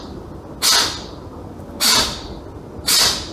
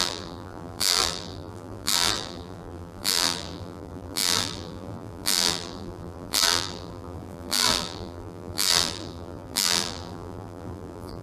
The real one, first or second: first